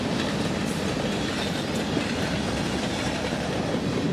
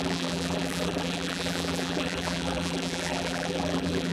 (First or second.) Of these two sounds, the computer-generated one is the second